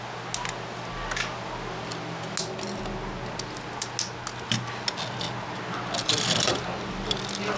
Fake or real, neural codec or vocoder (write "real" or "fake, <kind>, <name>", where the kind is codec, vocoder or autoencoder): real